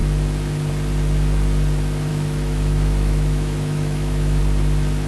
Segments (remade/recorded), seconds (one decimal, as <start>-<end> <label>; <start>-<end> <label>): 0.0-2.1 recorded; 2.1-4.4 remade; 4.4-5.1 recorded